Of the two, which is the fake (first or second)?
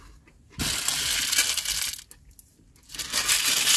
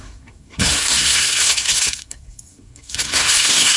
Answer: second